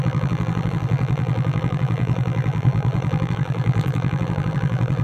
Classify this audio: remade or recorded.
remade